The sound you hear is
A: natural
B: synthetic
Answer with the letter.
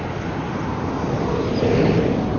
A